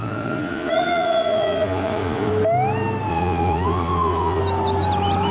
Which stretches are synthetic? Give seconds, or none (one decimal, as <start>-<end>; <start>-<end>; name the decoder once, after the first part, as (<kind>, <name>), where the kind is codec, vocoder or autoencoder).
0.0-2.3 (vocoder, Vocos); 3.1-4.4